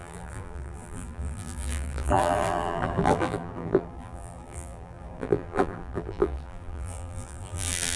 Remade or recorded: remade